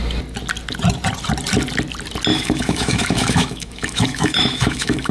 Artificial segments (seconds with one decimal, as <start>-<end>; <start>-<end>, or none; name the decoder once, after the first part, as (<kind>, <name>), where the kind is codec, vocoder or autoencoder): 2.3-5.1 (autoencoder, DAC-VAE)